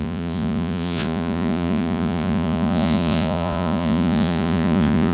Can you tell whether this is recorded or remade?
remade